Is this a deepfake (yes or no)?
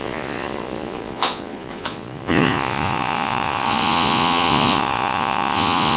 yes